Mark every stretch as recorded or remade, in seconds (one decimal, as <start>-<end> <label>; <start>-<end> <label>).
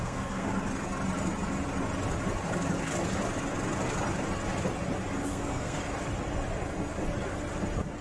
0.0-0.5 remade; 0.5-5.3 recorded; 5.3-5.8 remade; 5.8-8.0 recorded